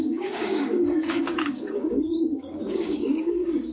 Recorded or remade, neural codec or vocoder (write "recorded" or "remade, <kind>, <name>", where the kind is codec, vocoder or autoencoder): remade, codec, DAC